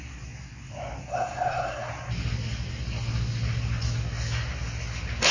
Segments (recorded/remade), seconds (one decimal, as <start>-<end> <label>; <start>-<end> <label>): 0.0-1.1 recorded; 1.1-1.9 remade; 1.9-5.3 recorded